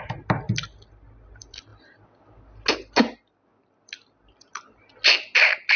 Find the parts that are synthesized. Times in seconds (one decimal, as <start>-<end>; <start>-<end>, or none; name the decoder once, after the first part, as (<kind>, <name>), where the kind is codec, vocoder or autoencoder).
none